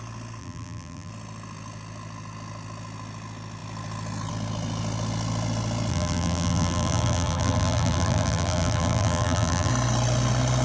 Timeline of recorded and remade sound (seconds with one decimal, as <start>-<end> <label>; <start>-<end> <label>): 0.0-0.4 recorded; 0.4-1.1 remade; 1.1-5.9 recorded; 5.9-9.7 remade; 9.7-10.6 recorded